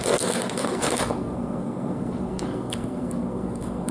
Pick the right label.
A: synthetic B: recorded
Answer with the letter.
A